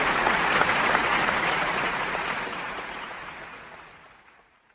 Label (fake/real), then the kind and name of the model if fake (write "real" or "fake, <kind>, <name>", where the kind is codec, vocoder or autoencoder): fake, vocoder, Vocos